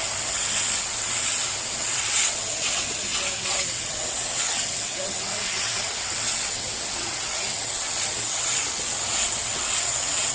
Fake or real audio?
fake